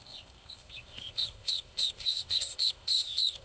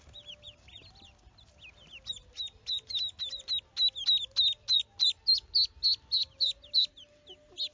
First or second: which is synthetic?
first